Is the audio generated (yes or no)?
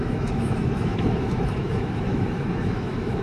yes